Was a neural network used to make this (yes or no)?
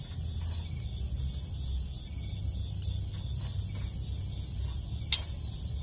no